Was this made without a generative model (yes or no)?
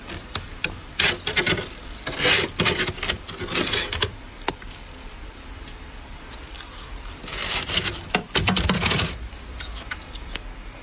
no